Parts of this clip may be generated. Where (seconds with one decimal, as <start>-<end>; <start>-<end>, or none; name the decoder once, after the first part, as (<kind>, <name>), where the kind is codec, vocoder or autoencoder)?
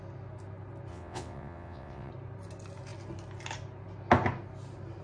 0.9-2.1 (vocoder, WaveNeXt)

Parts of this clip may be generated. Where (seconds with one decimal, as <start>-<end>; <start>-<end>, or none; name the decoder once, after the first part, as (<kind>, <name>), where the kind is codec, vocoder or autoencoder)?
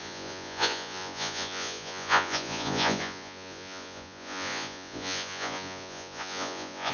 0.0-6.9 (vocoder, Vocos)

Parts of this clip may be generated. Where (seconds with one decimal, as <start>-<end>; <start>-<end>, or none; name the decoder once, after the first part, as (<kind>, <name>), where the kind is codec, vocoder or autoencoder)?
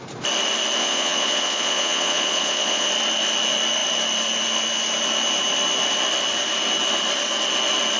0.8-2.9 (vocoder, Vocos)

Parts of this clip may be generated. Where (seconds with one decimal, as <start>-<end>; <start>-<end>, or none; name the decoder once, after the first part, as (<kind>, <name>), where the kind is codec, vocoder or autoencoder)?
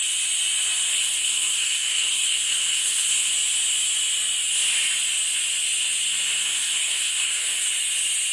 0.9-3.3 (codec, SNAC); 6.4-7.7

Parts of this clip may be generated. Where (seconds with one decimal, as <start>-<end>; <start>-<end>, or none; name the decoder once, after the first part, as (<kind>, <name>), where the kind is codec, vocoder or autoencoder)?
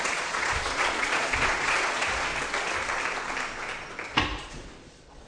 0.0-2.3 (vocoder, Vocos); 4.4-5.3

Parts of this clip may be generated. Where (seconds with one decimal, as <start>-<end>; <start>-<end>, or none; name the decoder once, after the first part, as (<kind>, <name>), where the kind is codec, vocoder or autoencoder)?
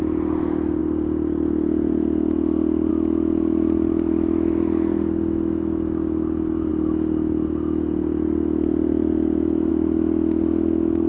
none